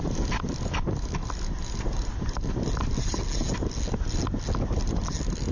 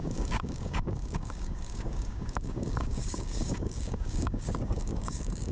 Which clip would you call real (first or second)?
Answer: first